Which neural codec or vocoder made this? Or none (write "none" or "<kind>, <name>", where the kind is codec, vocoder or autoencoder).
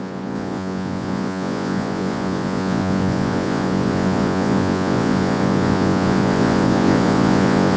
vocoder, Vocos